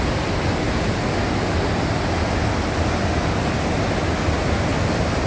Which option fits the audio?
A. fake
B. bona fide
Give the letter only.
B